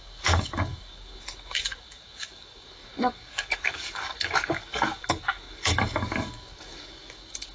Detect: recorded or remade remade